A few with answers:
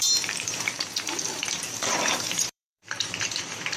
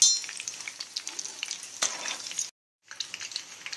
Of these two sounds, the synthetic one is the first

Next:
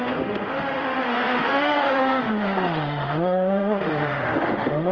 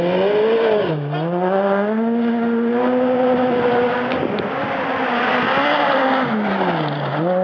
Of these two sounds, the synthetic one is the first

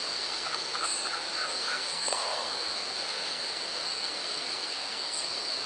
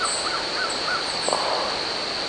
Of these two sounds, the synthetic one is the first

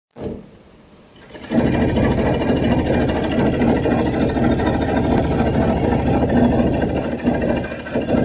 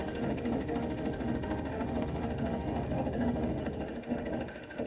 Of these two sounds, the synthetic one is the second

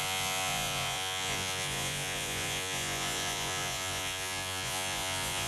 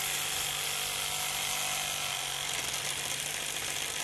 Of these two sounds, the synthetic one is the first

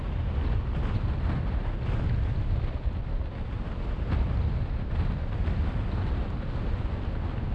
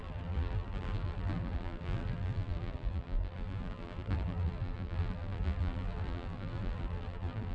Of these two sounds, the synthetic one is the second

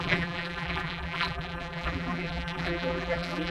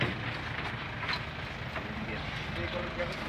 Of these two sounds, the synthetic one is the first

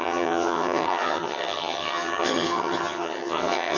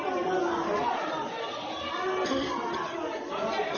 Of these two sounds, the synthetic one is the first